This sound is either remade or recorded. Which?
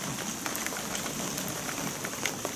recorded